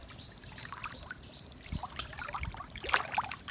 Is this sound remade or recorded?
recorded